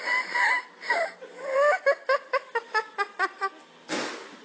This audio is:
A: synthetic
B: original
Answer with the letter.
B